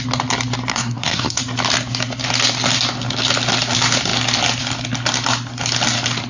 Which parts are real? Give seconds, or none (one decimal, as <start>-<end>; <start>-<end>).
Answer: 0.0-0.7; 1.4-6.3